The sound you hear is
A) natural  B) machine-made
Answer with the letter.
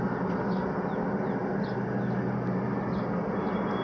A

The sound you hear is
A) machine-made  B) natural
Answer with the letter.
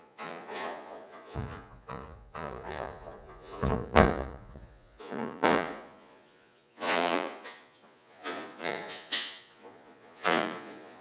A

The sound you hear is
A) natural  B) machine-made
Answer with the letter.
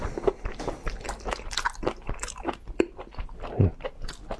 A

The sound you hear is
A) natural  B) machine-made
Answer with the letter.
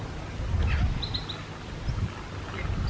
A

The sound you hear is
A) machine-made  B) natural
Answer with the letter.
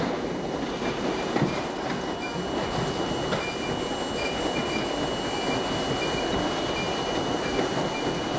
B